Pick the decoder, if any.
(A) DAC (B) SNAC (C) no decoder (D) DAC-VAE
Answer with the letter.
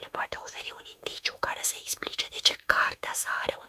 D